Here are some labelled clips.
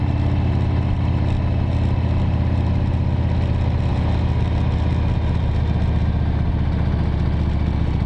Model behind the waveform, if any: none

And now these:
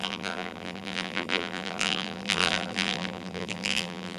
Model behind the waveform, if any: vocoder, BigVGAN v2